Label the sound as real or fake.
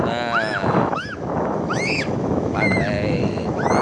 fake